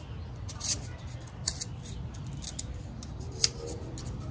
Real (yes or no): yes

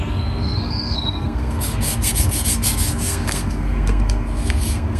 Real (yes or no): no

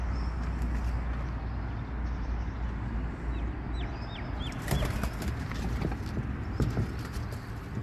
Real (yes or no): yes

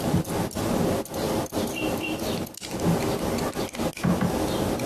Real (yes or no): yes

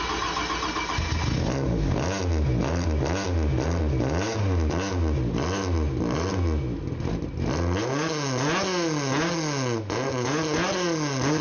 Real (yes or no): yes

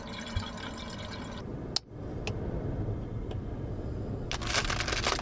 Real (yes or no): yes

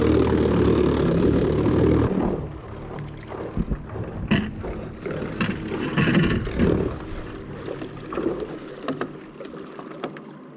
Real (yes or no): yes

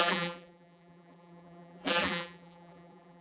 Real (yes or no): no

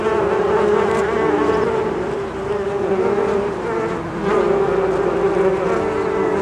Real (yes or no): yes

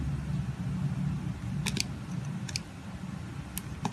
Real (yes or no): yes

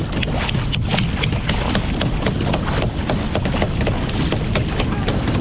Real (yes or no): yes